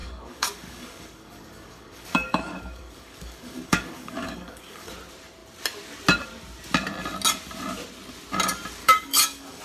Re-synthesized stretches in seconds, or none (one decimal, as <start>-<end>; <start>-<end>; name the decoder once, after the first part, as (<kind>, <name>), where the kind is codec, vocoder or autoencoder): 0.0-4.9 (codec, DAC); 8.8-9.6